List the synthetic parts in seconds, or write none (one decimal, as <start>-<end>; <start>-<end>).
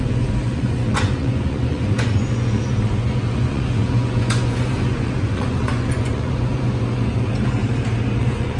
0.0-7.6; 8.2-8.6